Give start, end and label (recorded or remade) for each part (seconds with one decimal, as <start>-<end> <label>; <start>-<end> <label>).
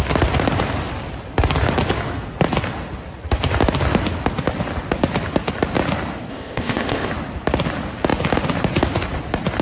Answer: 0.0-6.3 recorded; 6.3-7.1 remade; 7.1-9.6 recorded